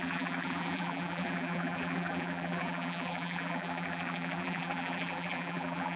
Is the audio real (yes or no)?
no